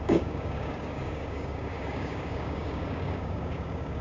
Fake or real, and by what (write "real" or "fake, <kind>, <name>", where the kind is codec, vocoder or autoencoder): fake, codec, DAC